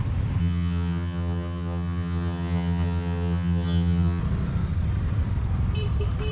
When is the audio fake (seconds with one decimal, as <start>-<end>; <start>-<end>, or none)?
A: 0.4-4.2